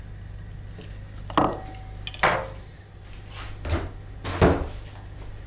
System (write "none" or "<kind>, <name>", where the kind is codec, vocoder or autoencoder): none